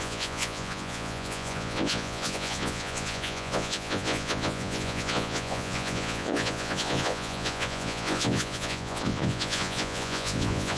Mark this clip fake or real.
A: fake